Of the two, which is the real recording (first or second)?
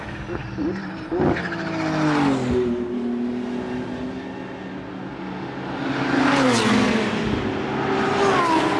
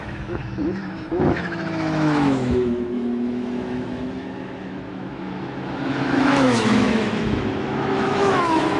first